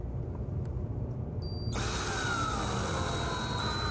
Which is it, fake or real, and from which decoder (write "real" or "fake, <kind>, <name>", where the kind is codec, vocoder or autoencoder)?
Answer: real